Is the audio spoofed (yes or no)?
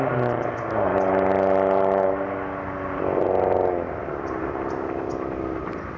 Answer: no